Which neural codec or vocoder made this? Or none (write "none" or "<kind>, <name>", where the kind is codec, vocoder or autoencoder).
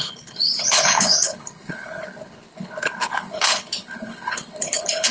codec, HILCodec